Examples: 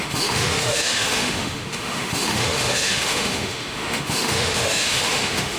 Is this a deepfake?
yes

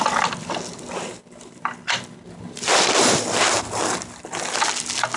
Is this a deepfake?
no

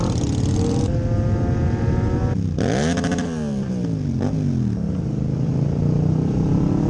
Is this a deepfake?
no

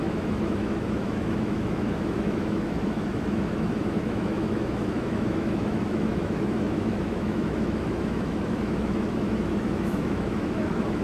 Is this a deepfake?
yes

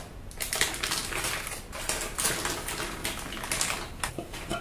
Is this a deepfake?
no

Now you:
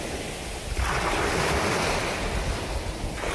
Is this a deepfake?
no